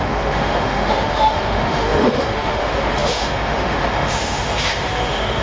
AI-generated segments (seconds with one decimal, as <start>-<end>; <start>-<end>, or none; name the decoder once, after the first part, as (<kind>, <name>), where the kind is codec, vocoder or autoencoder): 0.0-5.4 (autoencoder, DAC-VAE)